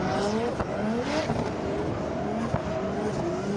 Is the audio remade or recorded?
recorded